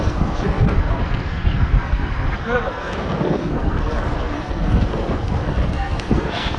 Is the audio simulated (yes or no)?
yes